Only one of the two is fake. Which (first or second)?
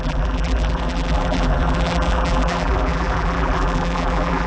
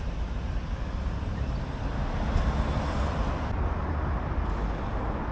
first